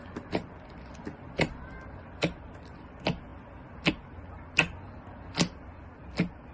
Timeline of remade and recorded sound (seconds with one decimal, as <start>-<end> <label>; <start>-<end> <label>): 0.0-6.5 recorded